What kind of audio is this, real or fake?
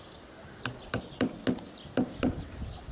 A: real